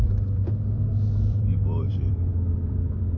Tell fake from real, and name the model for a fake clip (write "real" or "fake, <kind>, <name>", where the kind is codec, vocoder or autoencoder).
fake, vocoder, BigVGAN v2